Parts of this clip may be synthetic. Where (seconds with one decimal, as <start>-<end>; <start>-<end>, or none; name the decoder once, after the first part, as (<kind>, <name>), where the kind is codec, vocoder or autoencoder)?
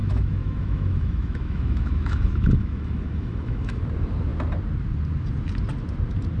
0.0-3.8 (autoencoder, DAC-VAE)